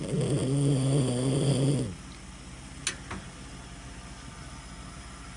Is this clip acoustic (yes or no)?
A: yes